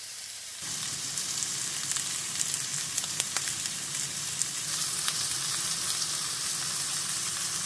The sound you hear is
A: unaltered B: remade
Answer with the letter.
B